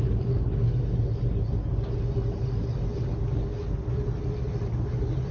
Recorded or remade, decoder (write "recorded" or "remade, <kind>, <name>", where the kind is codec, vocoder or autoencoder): recorded